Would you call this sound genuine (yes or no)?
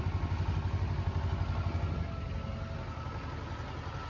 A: yes